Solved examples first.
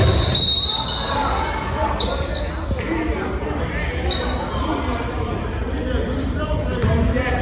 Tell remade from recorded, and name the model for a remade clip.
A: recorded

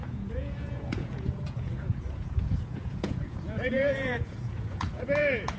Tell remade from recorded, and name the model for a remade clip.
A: remade, vocoder, Vocos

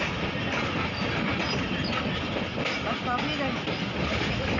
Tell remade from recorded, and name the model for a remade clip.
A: recorded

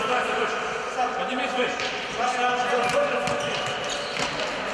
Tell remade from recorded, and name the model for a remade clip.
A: recorded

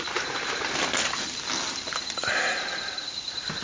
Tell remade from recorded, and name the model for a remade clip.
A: recorded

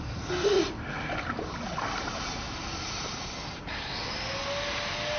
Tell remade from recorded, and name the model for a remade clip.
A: recorded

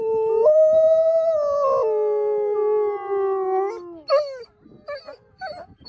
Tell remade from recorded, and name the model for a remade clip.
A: recorded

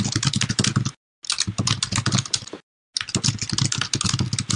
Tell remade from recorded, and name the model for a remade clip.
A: recorded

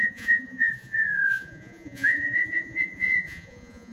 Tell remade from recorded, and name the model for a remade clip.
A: remade, vocoder, Vocos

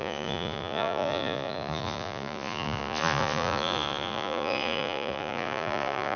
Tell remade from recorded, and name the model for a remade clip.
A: remade, vocoder, Vocos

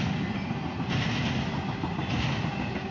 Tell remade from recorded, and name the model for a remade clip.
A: recorded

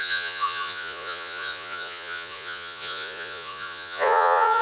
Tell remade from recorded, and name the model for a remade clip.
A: remade, vocoder, Vocos